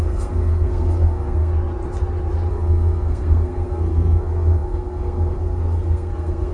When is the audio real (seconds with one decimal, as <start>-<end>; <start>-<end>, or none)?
1.5-2.5